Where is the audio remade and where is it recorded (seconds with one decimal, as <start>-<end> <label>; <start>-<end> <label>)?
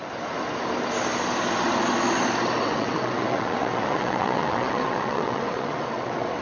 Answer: 0.0-2.6 recorded; 2.6-6.4 remade